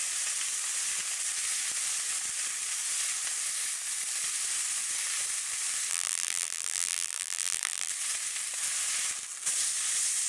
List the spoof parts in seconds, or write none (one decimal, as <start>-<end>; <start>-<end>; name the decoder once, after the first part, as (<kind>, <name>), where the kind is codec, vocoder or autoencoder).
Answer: 5.9-7.9 (vocoder, BigVGAN v2)

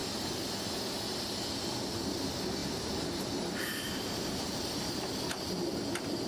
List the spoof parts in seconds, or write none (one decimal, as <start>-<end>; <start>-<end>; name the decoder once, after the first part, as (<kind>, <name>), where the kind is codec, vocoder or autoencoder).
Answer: 2.6-5.4 (vocoder, BigVGAN v2)